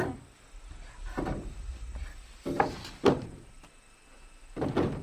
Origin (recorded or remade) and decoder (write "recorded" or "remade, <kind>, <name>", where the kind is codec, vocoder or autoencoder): recorded